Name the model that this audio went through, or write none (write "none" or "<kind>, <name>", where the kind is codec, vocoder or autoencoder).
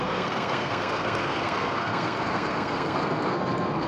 codec, SNAC